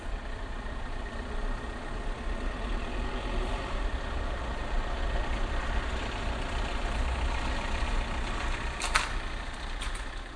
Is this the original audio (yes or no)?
no